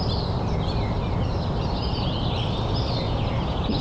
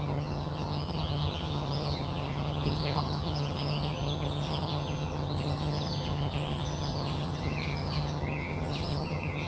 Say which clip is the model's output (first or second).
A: second